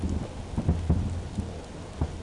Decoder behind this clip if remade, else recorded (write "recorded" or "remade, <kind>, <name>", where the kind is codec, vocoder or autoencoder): recorded